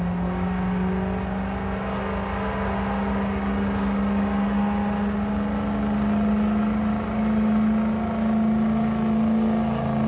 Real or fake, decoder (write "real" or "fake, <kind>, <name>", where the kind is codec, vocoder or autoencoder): real